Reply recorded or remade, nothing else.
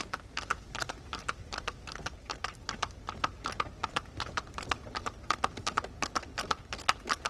recorded